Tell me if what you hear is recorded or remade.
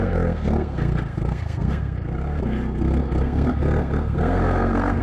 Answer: remade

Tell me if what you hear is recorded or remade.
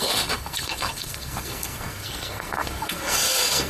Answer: remade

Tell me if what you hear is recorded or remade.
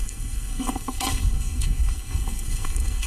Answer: remade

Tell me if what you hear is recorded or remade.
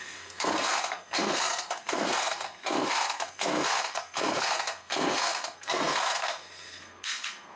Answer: remade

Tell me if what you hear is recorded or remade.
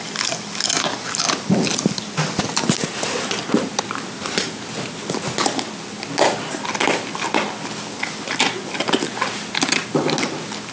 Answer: recorded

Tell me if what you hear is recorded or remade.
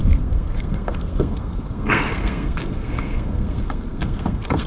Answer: remade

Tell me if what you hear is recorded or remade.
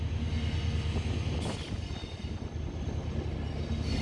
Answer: recorded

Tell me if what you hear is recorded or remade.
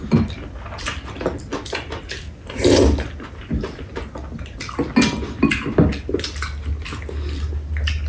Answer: recorded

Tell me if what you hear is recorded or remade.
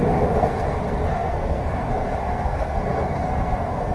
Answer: remade